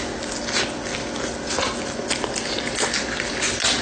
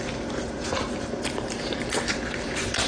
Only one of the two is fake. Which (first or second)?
second